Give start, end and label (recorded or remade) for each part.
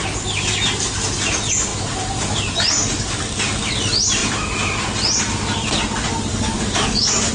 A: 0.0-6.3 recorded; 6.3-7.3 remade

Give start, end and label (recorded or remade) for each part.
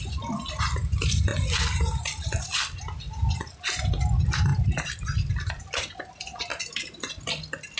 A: 0.0-4.5 recorded; 4.5-5.9 remade; 5.9-6.5 recorded; 6.5-7.8 remade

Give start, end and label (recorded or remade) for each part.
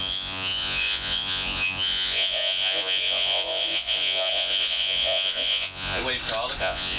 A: 0.0-6.0 remade; 6.0-6.6 recorded; 6.6-7.0 remade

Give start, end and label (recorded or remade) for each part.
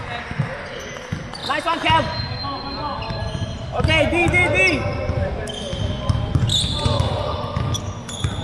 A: 0.0-8.4 recorded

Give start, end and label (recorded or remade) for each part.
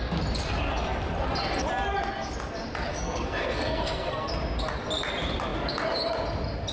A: 0.0-2.9 recorded; 2.9-4.3 remade; 4.3-6.7 recorded